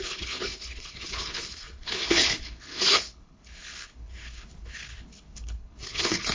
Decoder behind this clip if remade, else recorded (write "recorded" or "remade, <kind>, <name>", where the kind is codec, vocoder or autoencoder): remade, codec, HILCodec